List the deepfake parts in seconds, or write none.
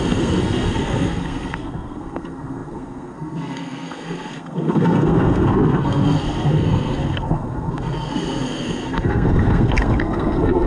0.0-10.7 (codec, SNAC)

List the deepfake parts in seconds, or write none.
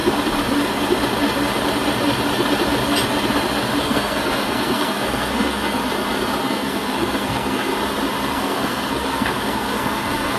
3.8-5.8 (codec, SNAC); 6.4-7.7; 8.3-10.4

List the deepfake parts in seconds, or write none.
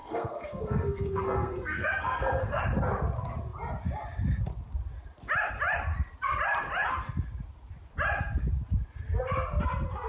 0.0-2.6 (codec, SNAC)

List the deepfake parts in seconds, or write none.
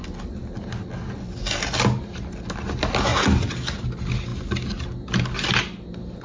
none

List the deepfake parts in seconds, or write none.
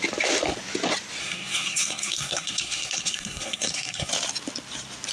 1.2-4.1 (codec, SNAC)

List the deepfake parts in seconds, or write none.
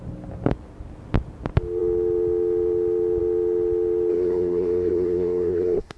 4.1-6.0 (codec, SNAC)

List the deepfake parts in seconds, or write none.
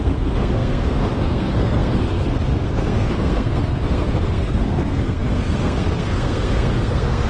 0.0-7.3 (codec, SNAC)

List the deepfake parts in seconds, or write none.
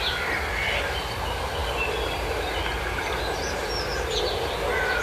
none